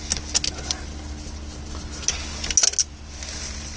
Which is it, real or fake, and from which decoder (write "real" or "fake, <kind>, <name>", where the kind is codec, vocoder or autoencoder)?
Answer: real